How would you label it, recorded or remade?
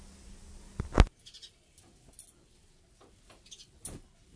recorded